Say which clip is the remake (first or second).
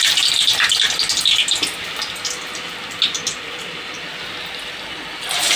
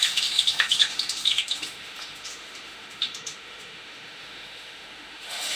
second